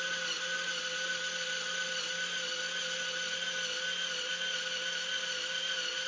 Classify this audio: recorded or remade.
recorded